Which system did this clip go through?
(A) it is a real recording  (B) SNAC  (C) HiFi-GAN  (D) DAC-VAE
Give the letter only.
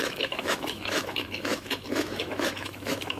D